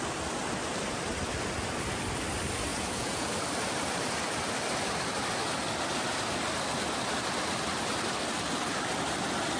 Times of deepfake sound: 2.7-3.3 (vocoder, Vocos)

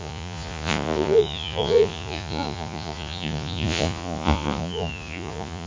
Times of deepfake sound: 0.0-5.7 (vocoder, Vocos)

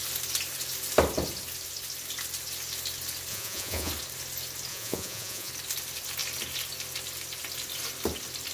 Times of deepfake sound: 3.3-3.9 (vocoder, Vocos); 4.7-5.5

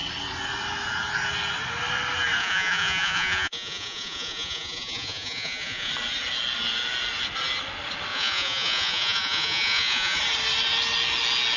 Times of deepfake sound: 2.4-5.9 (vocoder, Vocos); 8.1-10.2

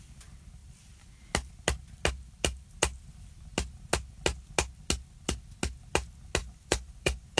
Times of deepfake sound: 6.4-7.4 (vocoder, Vocos)